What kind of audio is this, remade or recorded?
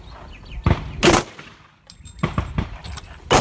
recorded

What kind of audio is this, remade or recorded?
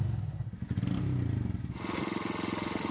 recorded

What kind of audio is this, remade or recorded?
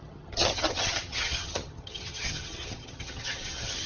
remade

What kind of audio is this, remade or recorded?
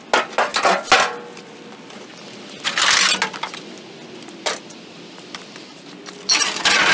recorded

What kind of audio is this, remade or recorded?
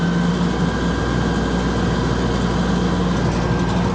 recorded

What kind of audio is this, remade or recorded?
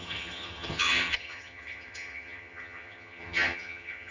remade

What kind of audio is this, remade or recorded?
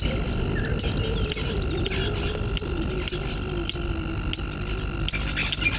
recorded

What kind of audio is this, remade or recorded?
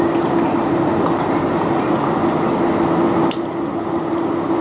recorded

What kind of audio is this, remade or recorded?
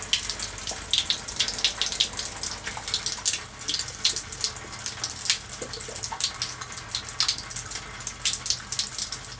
recorded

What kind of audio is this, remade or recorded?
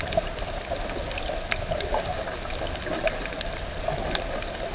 recorded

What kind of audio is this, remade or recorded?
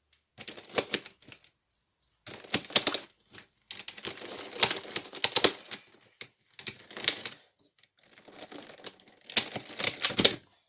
recorded